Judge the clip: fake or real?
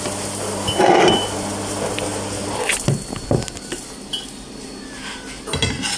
real